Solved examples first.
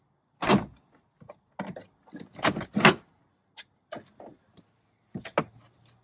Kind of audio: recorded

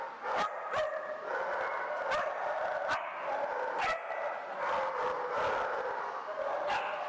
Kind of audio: recorded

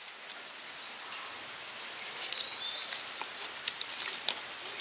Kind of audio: remade